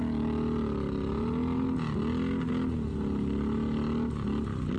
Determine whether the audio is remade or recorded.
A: recorded